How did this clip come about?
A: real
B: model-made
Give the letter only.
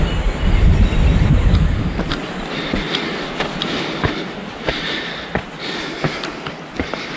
A